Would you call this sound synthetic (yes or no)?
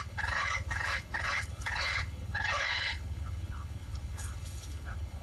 yes